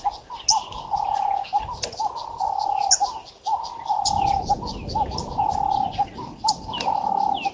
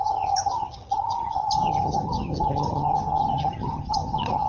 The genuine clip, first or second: first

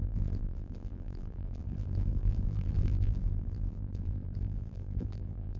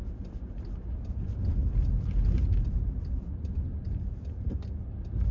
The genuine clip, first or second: second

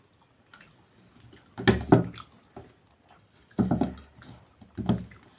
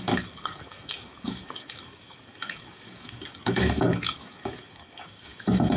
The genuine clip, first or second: first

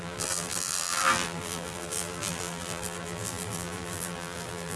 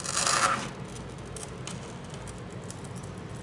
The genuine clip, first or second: second